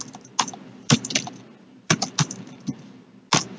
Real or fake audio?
real